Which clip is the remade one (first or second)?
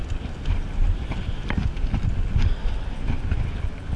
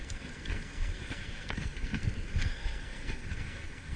second